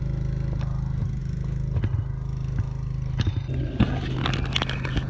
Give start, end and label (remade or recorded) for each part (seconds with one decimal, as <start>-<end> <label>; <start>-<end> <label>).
0.0-5.1 recorded